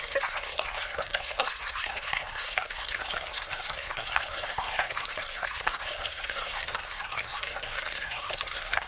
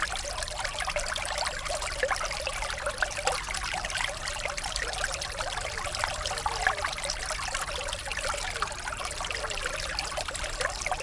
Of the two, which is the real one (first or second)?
second